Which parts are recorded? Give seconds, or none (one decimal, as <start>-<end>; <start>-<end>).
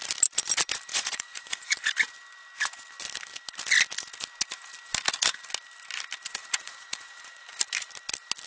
0.0-0.9; 1.9-6.4; 7.6-8.5